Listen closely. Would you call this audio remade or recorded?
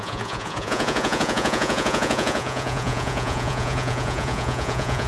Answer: remade